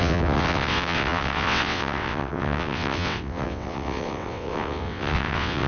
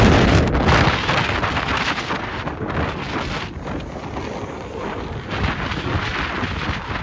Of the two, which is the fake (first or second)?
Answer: first